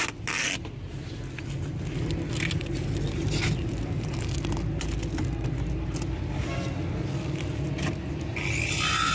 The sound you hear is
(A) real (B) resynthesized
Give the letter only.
A